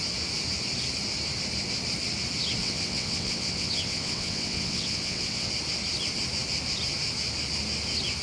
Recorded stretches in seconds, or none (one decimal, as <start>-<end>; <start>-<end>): 0.0-2.6; 5.5-8.2